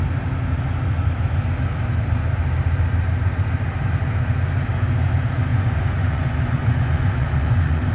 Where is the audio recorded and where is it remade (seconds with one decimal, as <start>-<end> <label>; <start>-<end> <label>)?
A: 0.0-5.5 recorded; 5.5-7.9 remade